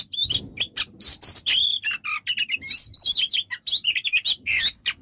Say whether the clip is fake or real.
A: fake